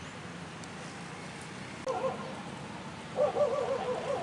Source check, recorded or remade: recorded